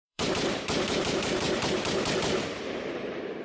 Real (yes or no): no